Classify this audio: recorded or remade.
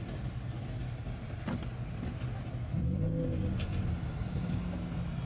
recorded